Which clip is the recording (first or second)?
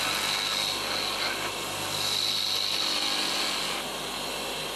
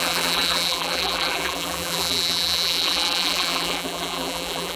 first